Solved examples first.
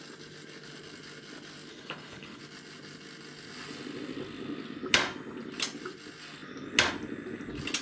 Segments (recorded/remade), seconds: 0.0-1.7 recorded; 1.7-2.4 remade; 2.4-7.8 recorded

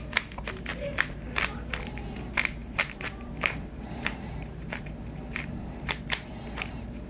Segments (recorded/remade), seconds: 0.0-0.7 recorded; 0.7-1.7 remade; 1.7-2.6 recorded; 2.6-6.0 remade; 6.0-7.1 recorded

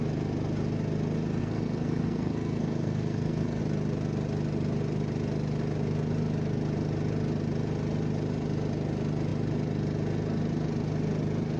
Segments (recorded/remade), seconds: 0.0-1.4 recorded; 1.4-3.6 remade; 3.6-11.6 recorded